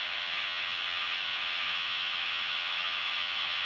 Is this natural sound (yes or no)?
no